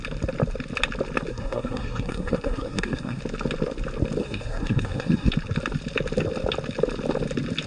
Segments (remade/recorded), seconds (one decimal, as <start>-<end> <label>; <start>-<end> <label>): 0.0-1.3 recorded; 1.3-3.2 remade; 3.2-4.2 recorded; 4.2-5.3 remade; 5.3-7.7 recorded